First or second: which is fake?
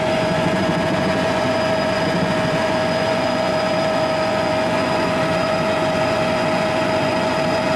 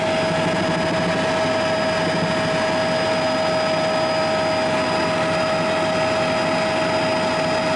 first